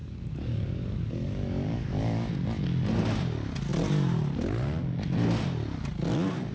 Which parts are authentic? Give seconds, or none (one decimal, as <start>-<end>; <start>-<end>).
2.3-6.5